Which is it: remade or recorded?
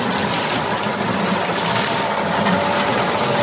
recorded